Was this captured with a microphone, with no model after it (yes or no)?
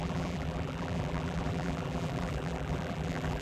no